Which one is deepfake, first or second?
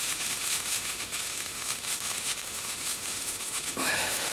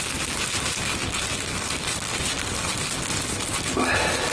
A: first